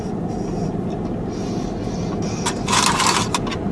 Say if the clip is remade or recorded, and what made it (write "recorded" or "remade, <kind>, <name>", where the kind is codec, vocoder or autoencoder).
recorded